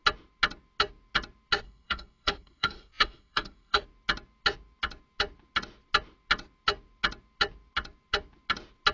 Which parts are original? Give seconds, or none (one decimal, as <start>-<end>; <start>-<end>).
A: 0.0-1.6; 3.8-8.9